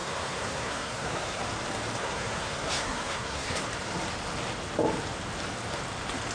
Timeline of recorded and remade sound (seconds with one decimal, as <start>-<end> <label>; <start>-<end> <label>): 0.0-1.4 remade; 1.4-2.0 recorded; 2.0-3.6 remade; 3.6-6.3 recorded